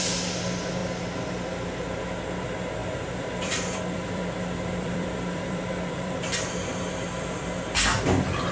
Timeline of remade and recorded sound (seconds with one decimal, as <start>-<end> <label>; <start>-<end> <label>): 0.0-2.8 recorded; 2.8-7.6 remade; 7.6-8.5 recorded